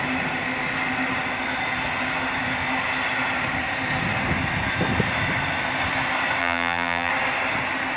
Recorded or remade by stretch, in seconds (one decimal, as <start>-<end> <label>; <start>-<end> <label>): 0.0-6.4 recorded; 6.4-7.1 remade; 7.1-8.0 recorded